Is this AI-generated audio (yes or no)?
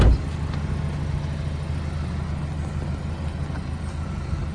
no